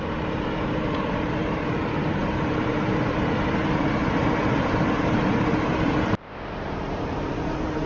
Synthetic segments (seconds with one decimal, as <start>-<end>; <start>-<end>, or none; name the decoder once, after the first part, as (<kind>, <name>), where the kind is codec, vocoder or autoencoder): 0.0-7.9 (vocoder, BigVGAN v2)

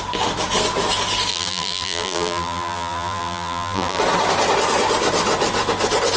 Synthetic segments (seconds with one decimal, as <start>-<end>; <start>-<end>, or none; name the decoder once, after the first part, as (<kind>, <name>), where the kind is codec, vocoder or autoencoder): 1.3-4.0 (vocoder, BigVGAN v2)

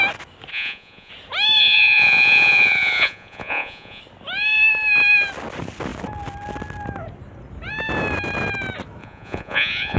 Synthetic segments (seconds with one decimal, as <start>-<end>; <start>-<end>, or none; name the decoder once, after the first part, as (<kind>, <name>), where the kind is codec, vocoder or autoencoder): 0.5-1.1 (vocoder, Vocos); 1.6-4.0; 9.0-10.0

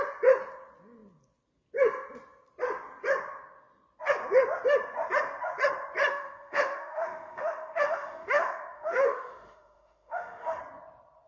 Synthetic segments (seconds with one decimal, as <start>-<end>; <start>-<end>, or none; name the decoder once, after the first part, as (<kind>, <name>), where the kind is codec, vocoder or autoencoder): 6.1-10.6 (autoencoder, DAC-VAE)

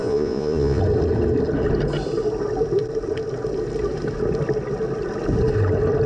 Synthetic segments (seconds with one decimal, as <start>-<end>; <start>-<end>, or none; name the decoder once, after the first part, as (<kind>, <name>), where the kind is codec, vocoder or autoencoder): 0.0-0.8 (vocoder, Vocos)